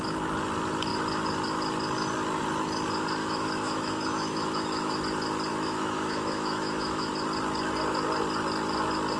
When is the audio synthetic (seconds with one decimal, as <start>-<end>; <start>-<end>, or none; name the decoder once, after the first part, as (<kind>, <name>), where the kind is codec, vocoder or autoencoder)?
3.2-5.0 (autoencoder, DAC-VAE); 5.5-7.1